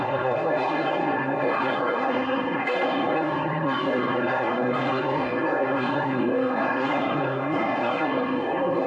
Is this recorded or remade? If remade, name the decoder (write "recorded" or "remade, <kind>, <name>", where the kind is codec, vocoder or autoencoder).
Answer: remade, codec, SNAC